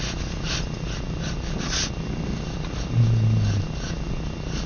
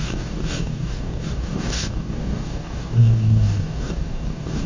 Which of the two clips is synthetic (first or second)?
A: second